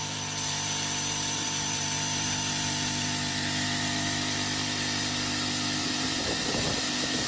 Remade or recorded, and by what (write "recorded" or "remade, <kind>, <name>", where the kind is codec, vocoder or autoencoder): remade, vocoder, BigVGAN v2